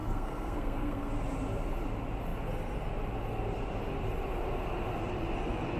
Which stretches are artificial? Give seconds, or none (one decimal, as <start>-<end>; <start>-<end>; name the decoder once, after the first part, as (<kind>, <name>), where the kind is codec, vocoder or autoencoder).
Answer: 0.0-1.1 (codec, SNAC)